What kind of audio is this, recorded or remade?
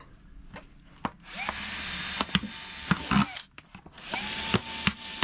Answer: recorded